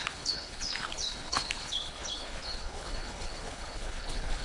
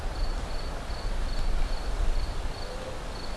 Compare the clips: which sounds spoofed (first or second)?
first